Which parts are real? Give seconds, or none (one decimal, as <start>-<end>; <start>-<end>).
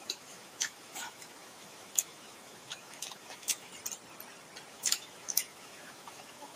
3.7-4.7